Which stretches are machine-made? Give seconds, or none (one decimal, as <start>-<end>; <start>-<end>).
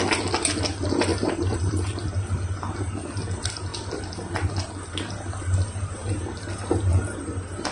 1.1-2.1